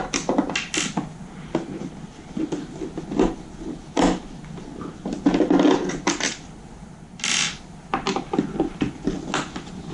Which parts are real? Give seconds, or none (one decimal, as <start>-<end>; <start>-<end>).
0.0-9.9